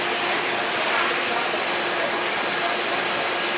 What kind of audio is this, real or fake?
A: real